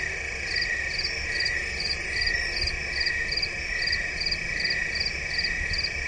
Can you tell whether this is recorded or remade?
recorded